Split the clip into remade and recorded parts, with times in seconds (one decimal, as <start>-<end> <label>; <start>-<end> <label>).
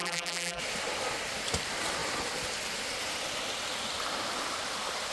0.0-0.6 remade; 0.6-5.1 recorded